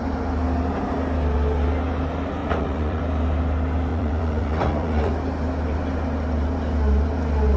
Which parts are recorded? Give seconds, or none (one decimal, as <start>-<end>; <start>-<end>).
0.0-2.4; 3.0-3.9; 5.1-7.6